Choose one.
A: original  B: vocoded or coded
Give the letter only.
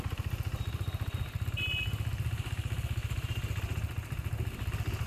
A